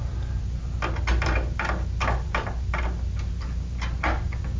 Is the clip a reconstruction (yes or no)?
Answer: no